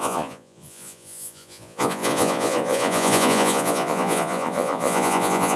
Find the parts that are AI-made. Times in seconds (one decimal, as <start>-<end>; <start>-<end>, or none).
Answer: 0.0-5.6